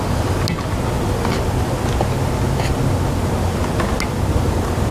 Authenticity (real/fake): real